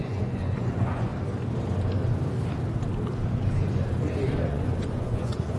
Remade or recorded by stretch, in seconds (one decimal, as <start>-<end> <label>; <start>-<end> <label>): 0.0-1.1 remade; 1.1-4.5 recorded; 4.5-5.6 remade